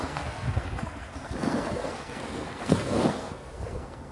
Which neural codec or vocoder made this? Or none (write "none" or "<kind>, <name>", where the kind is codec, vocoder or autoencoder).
codec, SNAC